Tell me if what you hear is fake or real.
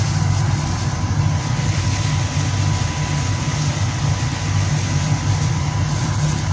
real